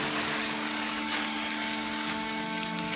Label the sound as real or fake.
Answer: fake